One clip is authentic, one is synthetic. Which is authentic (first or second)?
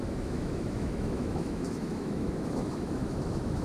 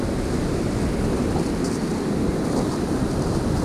second